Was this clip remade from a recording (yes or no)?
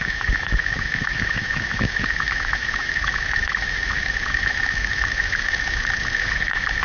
yes